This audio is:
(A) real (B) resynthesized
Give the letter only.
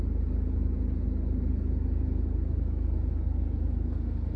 A